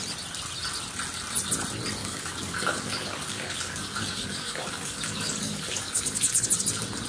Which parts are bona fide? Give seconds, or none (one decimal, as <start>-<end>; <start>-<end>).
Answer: 0.0-2.0; 6.3-7.1